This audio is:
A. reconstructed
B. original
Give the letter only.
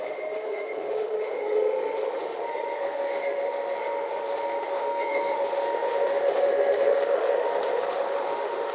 A